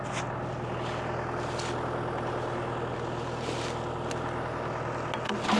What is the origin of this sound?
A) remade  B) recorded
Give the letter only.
B